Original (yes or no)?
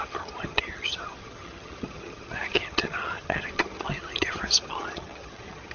no